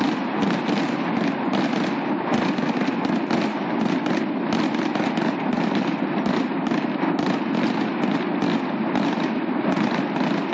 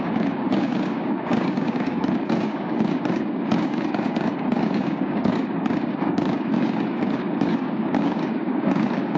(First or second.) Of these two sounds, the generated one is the second